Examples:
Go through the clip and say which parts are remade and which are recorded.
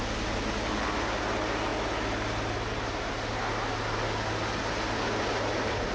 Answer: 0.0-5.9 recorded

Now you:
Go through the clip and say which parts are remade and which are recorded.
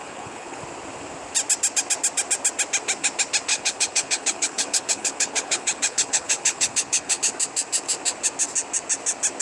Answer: 0.0-0.6 remade; 0.6-3.5 recorded; 3.5-7.2 remade; 7.2-9.4 recorded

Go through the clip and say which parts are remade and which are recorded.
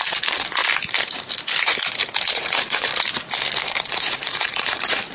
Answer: 0.0-0.6 remade; 0.6-2.3 recorded; 2.3-2.9 remade; 2.9-3.6 recorded; 3.6-5.1 remade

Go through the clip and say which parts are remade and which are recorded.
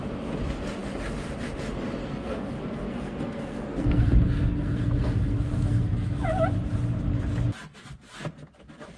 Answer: 0.0-2.0 recorded; 2.0-6.1 remade; 6.1-9.0 recorded